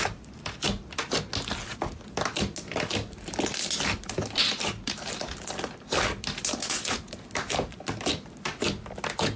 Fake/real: real